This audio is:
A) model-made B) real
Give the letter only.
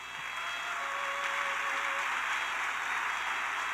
B